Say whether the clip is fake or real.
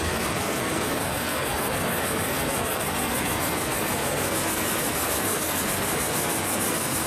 fake